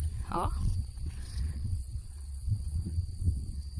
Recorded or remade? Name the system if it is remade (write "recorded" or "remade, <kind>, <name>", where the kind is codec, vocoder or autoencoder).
remade, vocoder, WaveNeXt